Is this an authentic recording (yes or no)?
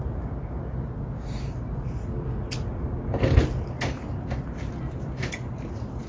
yes